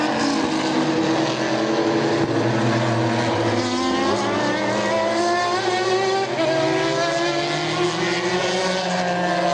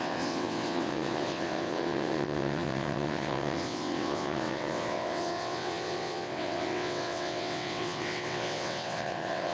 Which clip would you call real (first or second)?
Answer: first